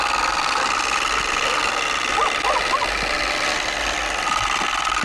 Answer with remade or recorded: recorded